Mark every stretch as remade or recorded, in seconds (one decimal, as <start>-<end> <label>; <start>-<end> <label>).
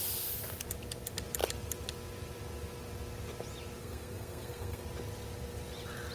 0.0-3.8 recorded; 3.8-4.8 remade; 4.8-6.1 recorded